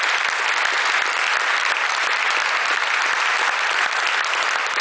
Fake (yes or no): no